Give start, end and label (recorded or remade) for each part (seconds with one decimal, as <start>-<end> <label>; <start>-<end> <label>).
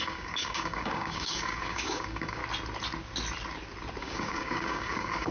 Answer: 0.0-2.4 remade; 2.4-4.0 recorded; 4.0-5.3 remade